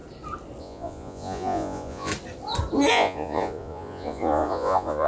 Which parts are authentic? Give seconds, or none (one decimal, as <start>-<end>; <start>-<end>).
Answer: 0.0-0.6; 2.1-2.9